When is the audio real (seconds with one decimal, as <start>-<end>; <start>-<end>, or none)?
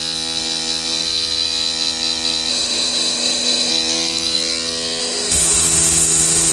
0.0-2.5; 3.7-5.0